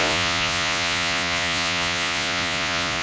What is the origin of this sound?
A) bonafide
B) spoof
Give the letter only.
B